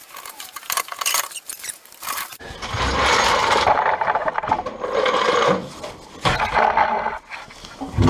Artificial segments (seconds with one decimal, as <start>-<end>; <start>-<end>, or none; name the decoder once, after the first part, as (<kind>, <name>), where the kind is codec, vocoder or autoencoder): 0.0-4.3 (vocoder, BigVGAN v2)